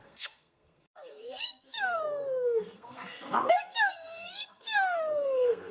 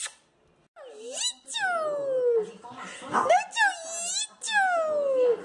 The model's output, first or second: first